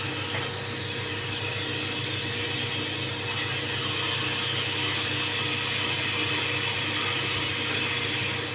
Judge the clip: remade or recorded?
recorded